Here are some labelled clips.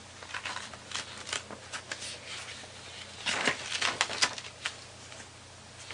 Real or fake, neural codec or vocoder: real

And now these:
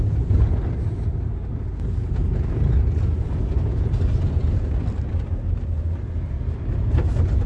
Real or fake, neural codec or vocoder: real